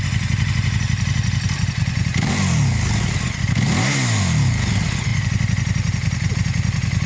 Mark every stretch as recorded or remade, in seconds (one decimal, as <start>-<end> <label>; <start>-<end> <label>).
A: 0.0-7.1 recorded